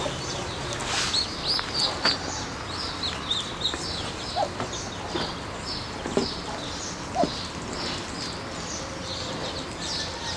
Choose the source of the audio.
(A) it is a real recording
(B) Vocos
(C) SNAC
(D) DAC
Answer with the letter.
A